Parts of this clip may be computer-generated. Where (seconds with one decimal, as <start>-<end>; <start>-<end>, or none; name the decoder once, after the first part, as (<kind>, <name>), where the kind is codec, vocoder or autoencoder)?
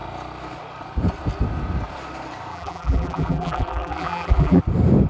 2.5-4.6 (vocoder, BigVGAN v2)